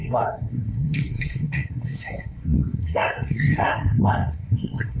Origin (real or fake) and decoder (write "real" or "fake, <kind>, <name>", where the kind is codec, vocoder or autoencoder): fake, codec, SNAC